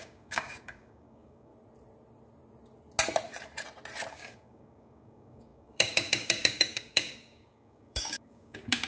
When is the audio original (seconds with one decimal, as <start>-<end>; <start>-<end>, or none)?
1.5-4.1

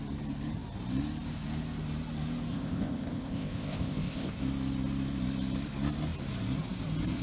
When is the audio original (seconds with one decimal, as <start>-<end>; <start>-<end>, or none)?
0.0-2.5; 4.4-7.2

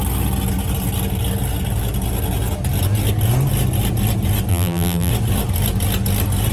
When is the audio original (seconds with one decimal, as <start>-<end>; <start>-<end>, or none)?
0.0-4.5; 5.1-6.5

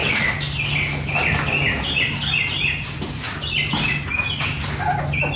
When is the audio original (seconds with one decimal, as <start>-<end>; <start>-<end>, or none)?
0.0-5.4

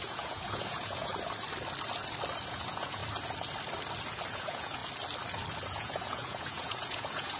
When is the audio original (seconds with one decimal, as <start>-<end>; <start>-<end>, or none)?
1.1-2.5; 3.0-4.3; 4.8-5.7

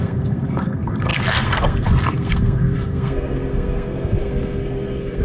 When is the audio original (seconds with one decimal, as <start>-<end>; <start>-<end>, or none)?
none